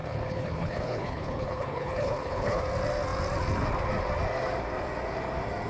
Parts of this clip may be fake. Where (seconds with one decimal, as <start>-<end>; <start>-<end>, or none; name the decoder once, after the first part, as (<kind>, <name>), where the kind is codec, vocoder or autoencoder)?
0.0-2.6 (codec, HILCodec)